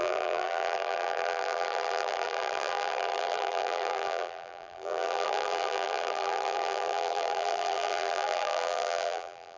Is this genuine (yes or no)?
no